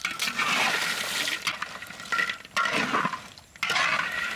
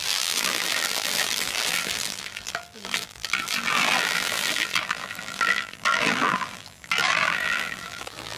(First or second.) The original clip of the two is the first